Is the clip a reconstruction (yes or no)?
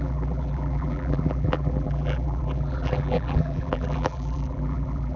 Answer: yes